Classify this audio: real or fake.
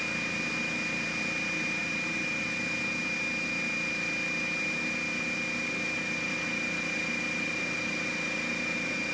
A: real